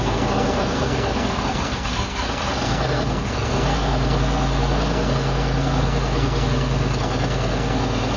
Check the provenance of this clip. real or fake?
fake